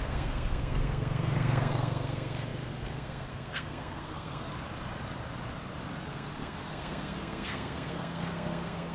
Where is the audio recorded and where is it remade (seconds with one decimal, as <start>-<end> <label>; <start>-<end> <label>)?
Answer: 0.0-4.5 remade; 4.5-6.1 recorded; 6.1-8.9 remade